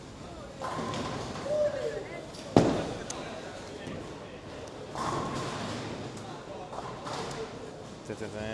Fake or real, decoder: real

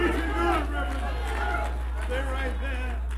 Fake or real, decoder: real